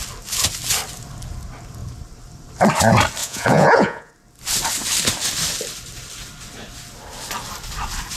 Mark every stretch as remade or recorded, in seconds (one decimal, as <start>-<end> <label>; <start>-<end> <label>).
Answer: 0.0-3.2 recorded; 3.2-4.1 remade; 4.1-8.2 recorded